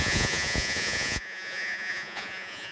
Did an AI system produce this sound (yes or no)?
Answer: yes